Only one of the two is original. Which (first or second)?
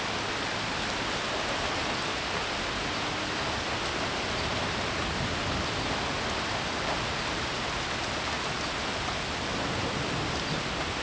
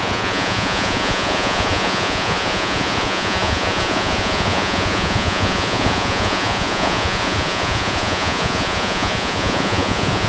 first